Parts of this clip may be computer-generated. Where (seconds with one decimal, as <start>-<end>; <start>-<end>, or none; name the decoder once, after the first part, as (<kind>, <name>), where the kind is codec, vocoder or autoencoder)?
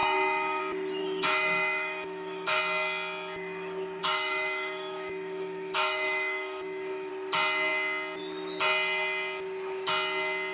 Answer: 0.0-0.6 (autoencoder, DAC-VAE); 1.0-2.6; 4.0-7.1